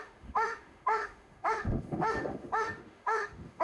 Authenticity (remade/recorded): remade